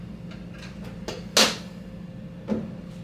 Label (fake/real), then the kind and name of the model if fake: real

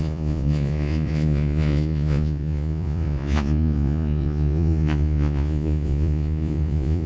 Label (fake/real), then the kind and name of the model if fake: fake, vocoder, Vocos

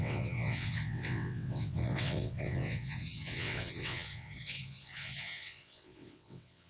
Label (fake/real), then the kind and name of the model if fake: fake, vocoder, WaveNeXt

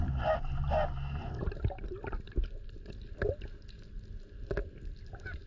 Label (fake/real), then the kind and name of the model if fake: real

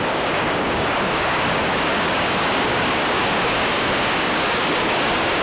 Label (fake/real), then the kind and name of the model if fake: fake, codec, DAC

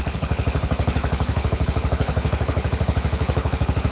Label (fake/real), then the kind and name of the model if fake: fake, codec, HILCodec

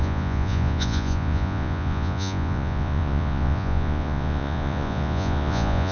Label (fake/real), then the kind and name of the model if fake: fake, vocoder, Vocos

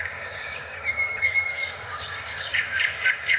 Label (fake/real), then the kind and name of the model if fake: fake, codec, DAC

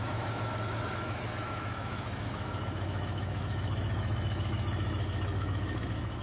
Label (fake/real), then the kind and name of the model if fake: fake, autoencoder, DAC-VAE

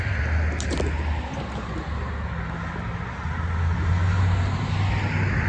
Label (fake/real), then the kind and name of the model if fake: real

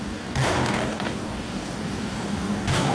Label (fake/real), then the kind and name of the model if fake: fake, codec, DAC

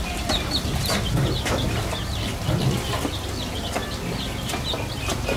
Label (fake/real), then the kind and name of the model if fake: real